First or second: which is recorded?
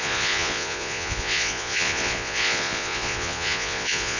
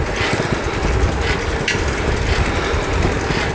second